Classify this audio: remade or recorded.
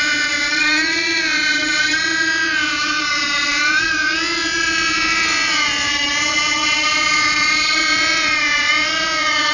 remade